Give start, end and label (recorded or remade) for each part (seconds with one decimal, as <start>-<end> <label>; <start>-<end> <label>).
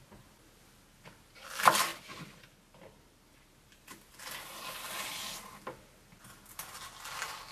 0.0-7.5 recorded